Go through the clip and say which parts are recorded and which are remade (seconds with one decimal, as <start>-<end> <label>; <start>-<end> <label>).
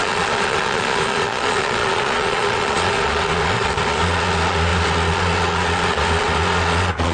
0.0-7.1 remade